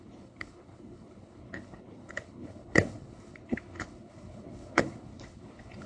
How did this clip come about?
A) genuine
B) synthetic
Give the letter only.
B